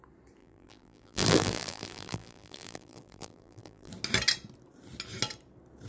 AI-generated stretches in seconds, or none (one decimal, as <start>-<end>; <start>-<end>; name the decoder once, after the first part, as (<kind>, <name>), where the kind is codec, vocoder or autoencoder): 0.4-3.9 (vocoder, BigVGAN v2)